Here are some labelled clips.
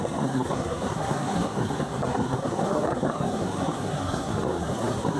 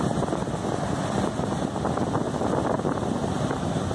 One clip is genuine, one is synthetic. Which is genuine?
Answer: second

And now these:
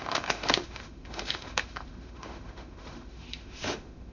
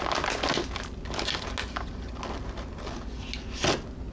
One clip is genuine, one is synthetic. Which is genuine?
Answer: second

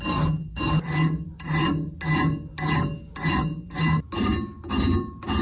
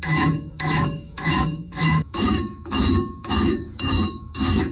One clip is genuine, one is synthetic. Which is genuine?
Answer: first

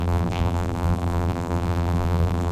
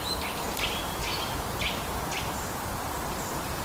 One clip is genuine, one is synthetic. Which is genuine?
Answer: second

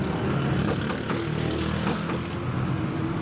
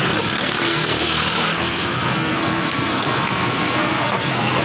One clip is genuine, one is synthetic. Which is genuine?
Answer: first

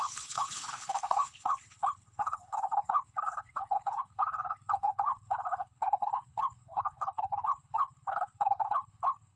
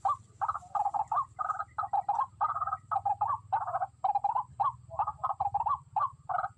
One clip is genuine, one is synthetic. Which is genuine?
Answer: second